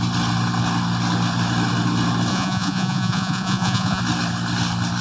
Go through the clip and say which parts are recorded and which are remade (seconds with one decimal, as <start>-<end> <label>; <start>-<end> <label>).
0.0-2.3 recorded; 2.3-4.0 remade; 4.0-5.0 recorded